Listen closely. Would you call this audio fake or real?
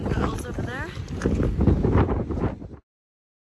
real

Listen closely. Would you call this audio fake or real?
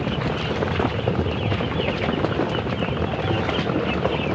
real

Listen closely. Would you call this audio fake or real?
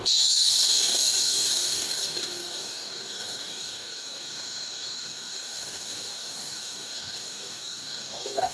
fake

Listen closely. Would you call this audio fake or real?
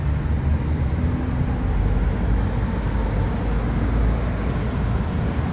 real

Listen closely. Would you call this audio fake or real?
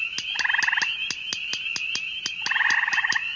real